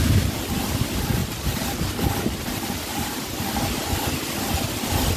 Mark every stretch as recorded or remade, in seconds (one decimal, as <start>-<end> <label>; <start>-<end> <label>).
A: 0.0-5.2 recorded